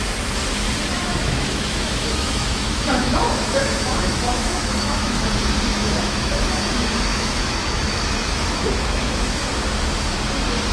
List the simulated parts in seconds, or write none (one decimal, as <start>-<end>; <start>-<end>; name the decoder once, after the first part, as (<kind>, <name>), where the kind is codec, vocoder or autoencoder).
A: 0.9-5.3 (autoencoder, DAC-VAE); 5.7-6.6; 7.1-9.4

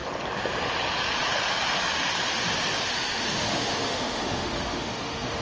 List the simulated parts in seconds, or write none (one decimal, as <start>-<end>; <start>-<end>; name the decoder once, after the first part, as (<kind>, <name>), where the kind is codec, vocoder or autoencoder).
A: 2.9-5.4 (autoencoder, DAC-VAE)

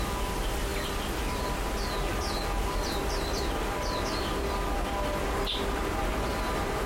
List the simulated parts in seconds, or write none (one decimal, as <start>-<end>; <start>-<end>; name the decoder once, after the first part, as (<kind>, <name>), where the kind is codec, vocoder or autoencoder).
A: none

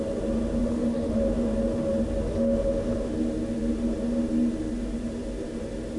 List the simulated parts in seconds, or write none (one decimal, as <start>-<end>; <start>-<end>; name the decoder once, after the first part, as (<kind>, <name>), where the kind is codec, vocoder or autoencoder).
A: 0.6-1.2 (autoencoder, DAC-VAE)

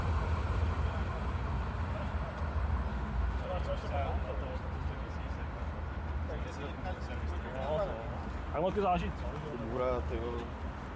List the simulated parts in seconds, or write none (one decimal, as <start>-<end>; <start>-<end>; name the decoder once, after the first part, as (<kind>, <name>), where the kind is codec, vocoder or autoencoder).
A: 2.9-3.4 (autoencoder, DAC-VAE)